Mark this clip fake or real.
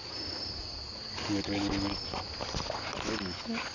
real